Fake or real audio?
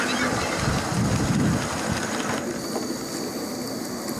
real